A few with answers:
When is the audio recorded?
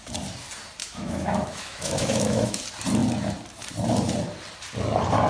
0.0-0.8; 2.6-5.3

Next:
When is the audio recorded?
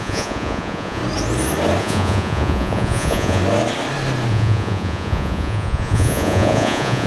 1.0-1.8; 3.4-4.3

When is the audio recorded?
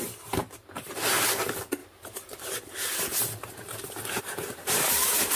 none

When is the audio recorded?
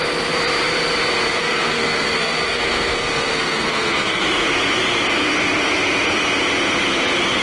0.0-1.3; 4.2-7.4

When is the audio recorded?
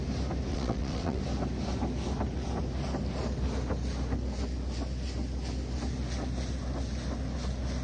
0.0-0.5; 1.2-7.8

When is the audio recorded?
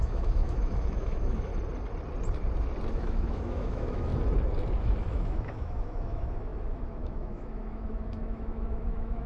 1.5-2.9; 4.1-4.8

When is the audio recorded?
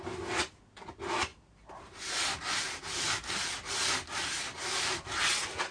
0.0-5.7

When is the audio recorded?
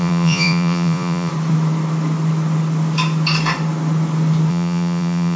1.3-4.5